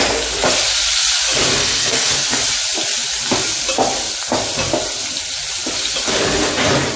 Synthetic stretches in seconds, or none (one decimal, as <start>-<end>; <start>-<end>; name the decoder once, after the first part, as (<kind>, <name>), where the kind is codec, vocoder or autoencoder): 1.6-2.1 (codec, SNAC)